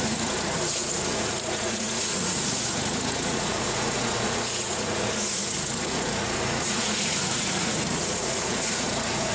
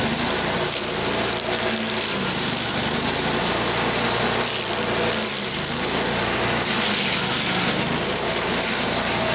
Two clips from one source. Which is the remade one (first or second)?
first